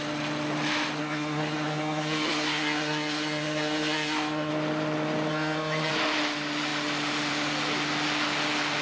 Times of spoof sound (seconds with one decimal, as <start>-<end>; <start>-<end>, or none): 1.0-4.5; 5.3-5.9

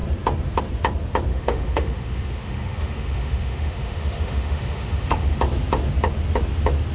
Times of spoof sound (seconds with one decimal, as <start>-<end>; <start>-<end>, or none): 1.3-5.4

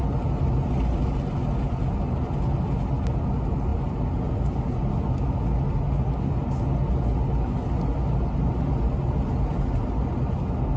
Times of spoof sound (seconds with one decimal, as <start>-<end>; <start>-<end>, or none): none

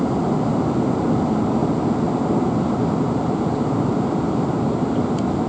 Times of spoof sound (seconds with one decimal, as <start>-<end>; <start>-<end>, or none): none

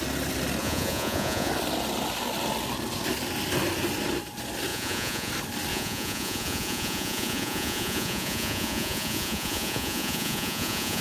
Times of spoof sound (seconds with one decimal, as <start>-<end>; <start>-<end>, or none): 0.6-1.5; 4.7-5.3; 5.7-11.0

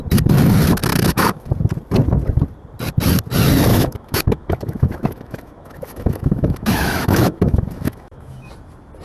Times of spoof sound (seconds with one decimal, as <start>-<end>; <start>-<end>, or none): 0.9-1.5; 3.7-8.5

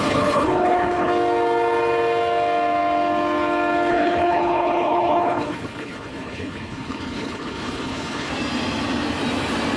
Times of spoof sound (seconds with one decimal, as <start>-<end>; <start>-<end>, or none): 0.0-1.1; 3.9-8.3